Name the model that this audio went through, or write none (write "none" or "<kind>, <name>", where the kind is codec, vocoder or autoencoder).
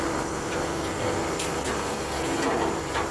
none